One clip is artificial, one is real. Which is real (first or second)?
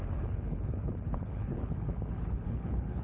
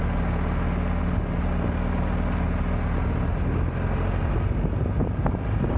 second